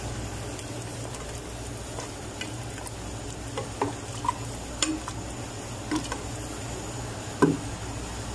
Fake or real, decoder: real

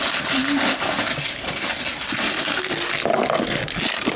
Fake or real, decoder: real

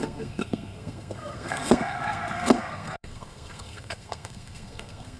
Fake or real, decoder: fake, codec, SNAC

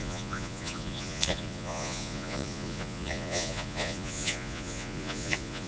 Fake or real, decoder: fake, vocoder, Vocos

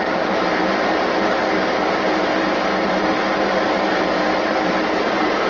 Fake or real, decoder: fake, vocoder, BigVGAN v2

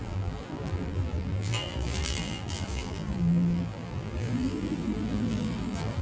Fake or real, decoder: fake, vocoder, BigVGAN v2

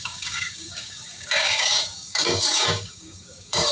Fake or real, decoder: fake, codec, DAC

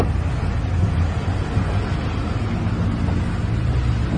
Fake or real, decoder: real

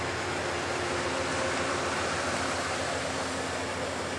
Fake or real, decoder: real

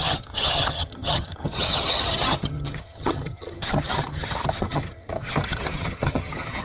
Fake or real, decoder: fake, vocoder, HiFi-GAN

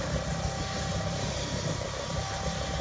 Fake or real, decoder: real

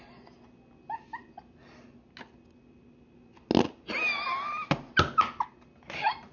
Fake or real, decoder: real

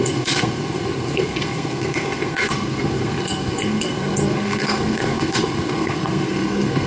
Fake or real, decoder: fake, codec, SNAC